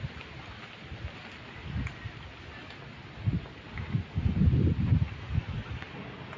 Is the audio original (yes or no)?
yes